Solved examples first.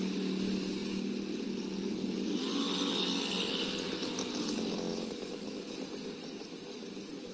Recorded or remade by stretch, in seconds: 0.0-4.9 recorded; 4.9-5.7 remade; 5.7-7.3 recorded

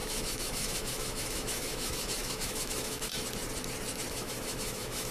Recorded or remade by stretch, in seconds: 0.0-3.1 remade; 3.1-4.1 recorded; 4.1-5.1 remade

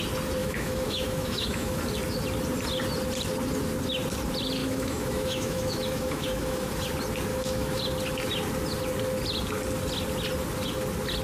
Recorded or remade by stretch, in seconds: 0.0-0.4 recorded; 0.4-1.8 remade; 1.8-4.6 recorded; 4.6-6.7 remade; 6.7-7.3 recorded; 7.3-7.8 remade; 7.8-11.2 recorded

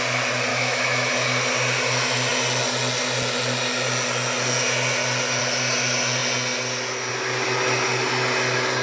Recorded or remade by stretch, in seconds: 0.0-0.5 recorded; 0.5-1.1 remade; 1.1-8.8 recorded

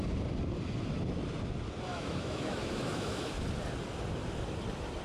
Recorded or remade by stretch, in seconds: 0.0-1.9 recorded; 1.9-3.3 remade; 3.3-5.0 recorded

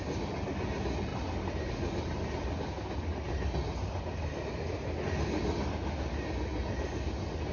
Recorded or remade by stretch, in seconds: 0.0-7.5 recorded

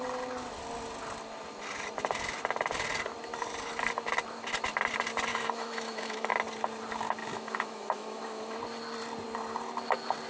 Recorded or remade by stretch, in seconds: 0.0-5.3 recorded; 5.3-6.3 remade; 6.3-7.2 recorded; 7.2-8.6 remade; 8.6-10.3 recorded

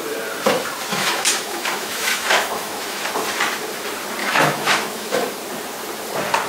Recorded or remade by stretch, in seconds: 0.0-0.9 recorded; 0.9-3.0 remade; 3.0-4.2 recorded; 4.2-5.2 remade; 5.2-6.5 recorded